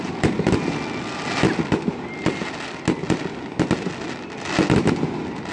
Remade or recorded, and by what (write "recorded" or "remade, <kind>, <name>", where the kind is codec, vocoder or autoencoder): recorded